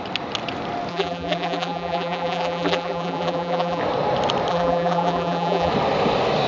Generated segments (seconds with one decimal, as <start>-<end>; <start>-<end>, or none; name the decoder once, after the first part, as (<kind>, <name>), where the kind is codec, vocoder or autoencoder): 0.9-3.8 (vocoder, BigVGAN v2); 4.5-5.7